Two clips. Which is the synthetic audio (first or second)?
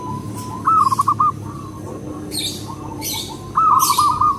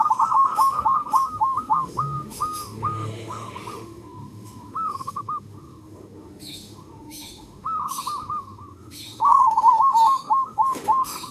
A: second